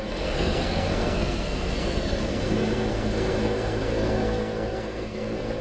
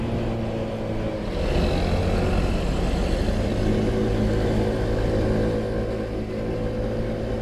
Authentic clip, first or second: second